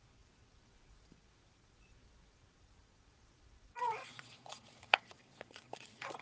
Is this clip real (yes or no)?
no